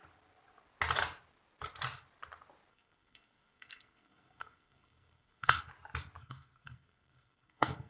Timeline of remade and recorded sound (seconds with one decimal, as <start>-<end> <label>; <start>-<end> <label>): 0.0-2.7 recorded; 2.7-5.6 remade; 5.6-6.2 recorded; 6.2-7.9 remade